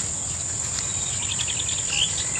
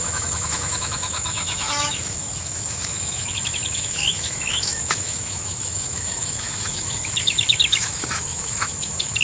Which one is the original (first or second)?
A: first